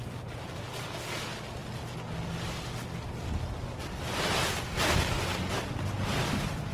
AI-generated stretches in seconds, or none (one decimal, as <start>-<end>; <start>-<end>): none